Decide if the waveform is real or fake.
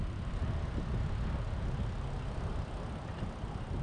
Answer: real